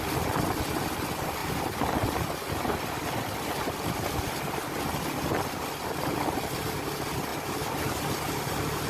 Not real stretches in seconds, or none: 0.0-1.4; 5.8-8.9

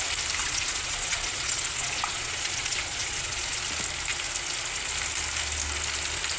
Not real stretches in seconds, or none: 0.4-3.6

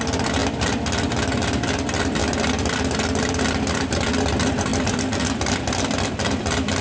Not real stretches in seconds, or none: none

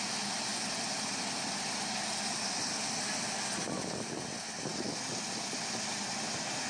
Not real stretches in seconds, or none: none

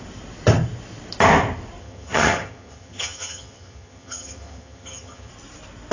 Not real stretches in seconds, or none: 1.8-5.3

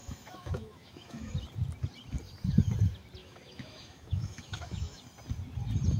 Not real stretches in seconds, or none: 0.0-1.3; 3.2-5.0

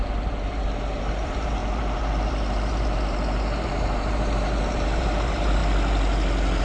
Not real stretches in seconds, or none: 0.0-5.6